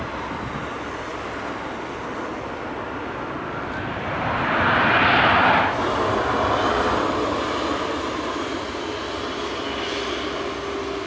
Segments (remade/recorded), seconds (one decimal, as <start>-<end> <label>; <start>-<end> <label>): 0.0-11.1 recorded